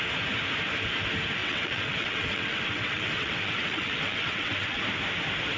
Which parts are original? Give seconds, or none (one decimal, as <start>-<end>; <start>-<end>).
0.0-1.4; 4.8-5.6